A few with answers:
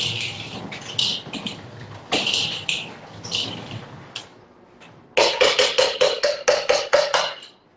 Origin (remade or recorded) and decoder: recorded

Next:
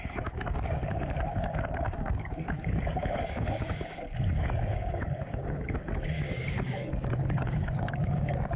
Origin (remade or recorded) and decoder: remade, codec, DAC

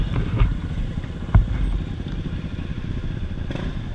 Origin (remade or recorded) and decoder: recorded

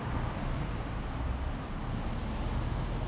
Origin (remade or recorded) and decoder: recorded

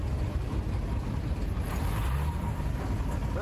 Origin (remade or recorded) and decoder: recorded